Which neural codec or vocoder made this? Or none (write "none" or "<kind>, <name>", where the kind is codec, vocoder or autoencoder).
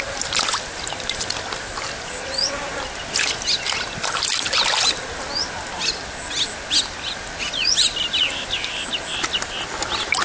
none